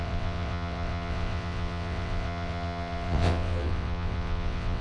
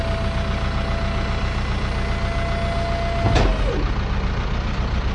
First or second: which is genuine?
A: second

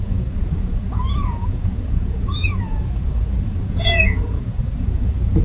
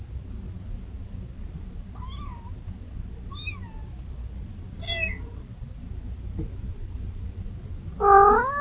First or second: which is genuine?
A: second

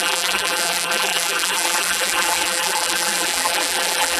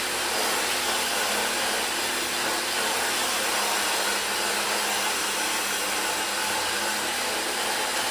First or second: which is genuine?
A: second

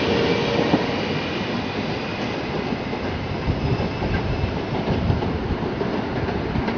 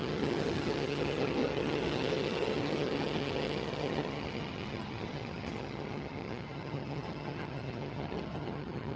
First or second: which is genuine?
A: first